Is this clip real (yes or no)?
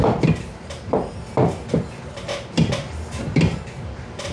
yes